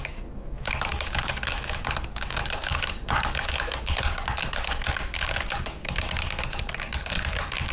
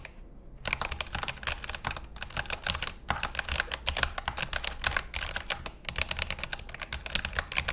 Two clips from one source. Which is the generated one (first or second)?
first